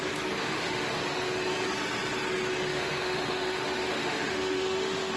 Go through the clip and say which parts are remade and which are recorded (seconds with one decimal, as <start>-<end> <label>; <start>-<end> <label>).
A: 0.0-0.4 recorded; 0.4-1.0 remade; 1.0-2.7 recorded; 2.7-5.2 remade